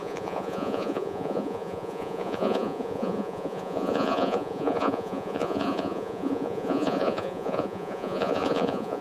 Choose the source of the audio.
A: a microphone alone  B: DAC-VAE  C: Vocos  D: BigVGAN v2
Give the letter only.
C